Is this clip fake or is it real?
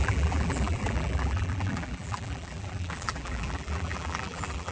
fake